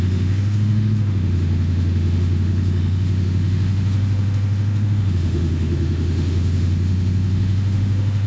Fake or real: fake